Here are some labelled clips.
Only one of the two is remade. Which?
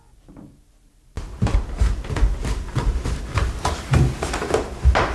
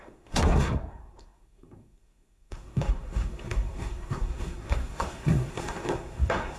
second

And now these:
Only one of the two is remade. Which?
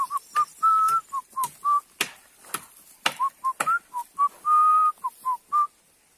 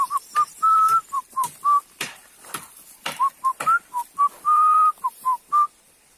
second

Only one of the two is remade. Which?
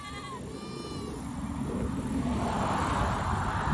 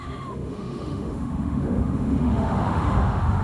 second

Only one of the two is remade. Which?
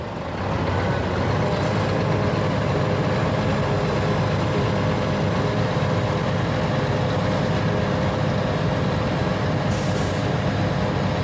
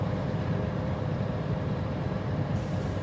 second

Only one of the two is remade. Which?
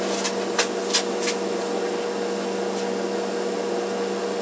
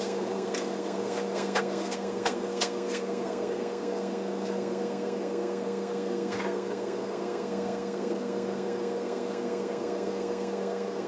second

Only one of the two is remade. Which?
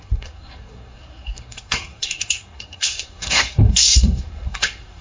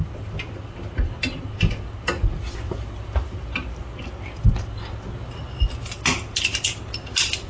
first